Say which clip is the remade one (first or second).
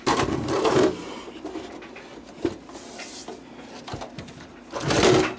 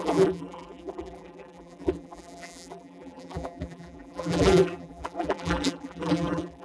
second